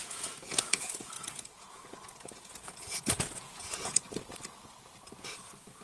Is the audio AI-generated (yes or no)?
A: yes